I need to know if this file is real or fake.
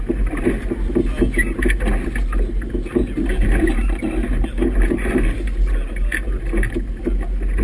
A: real